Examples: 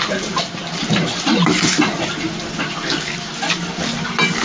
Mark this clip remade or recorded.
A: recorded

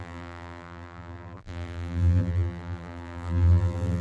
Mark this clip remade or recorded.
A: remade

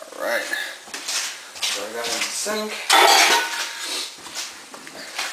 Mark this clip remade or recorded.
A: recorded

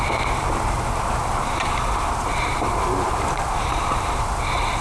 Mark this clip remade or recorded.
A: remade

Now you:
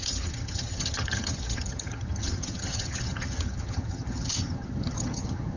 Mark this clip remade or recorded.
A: remade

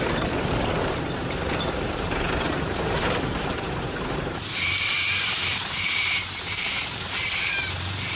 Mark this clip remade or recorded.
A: remade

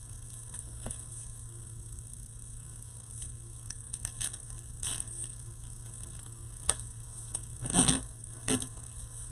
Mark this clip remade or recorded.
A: remade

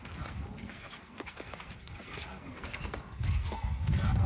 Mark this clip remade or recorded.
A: remade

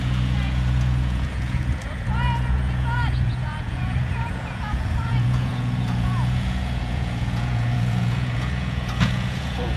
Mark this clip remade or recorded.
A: remade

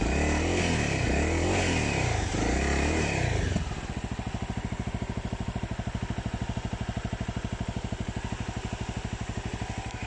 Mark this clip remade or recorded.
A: recorded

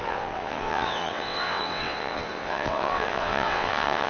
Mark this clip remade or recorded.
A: remade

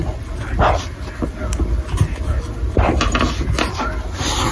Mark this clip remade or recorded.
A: recorded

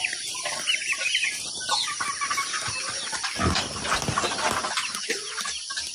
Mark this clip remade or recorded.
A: recorded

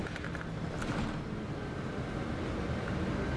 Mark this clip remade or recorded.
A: recorded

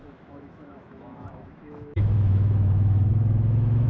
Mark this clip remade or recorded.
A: remade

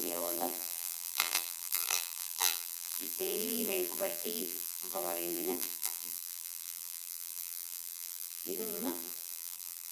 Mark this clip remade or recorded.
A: remade